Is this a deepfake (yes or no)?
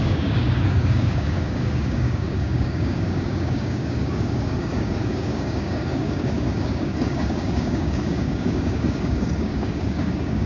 yes